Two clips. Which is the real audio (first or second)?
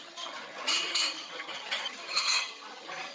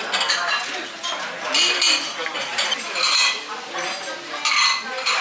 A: second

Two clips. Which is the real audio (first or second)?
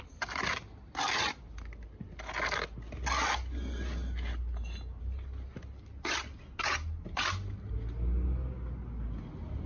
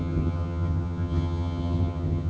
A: first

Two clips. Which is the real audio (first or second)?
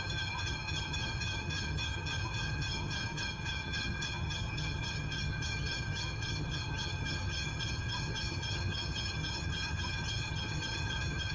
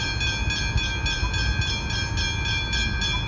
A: second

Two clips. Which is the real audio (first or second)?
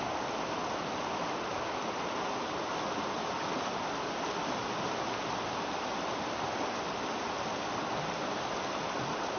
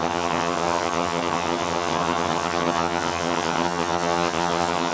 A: first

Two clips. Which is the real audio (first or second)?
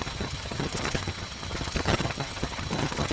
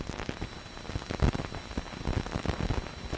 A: second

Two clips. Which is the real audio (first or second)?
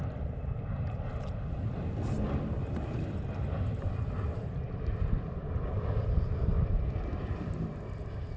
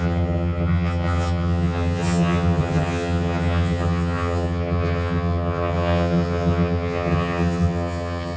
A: first